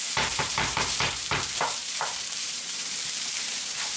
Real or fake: fake